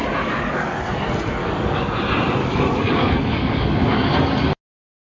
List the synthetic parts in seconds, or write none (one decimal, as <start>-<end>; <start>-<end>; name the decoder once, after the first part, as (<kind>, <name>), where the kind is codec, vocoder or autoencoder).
0.0-0.8 (codec, DAC); 1.4-2.0; 2.4-4.1